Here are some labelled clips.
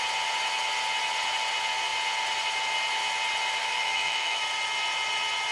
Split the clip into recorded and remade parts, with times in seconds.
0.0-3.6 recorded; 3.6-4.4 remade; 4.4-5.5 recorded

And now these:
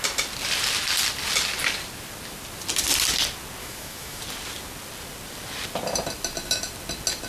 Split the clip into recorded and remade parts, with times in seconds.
0.0-3.6 recorded; 3.6-4.2 remade; 4.2-7.3 recorded

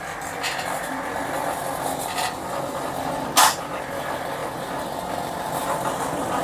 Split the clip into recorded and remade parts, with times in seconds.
0.0-6.4 recorded

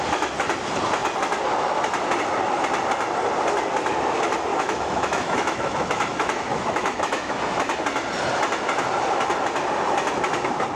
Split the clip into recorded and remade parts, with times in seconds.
0.0-4.5 recorded; 4.5-7.4 remade; 7.4-10.8 recorded

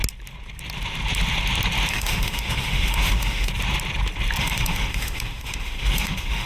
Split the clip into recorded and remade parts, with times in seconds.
0.0-1.9 recorded; 1.9-3.5 remade; 3.5-4.4 recorded; 4.4-6.5 remade

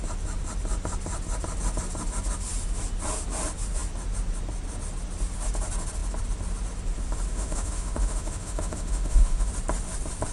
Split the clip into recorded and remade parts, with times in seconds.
0.0-7.3 recorded; 7.3-9.5 remade; 9.5-10.3 recorded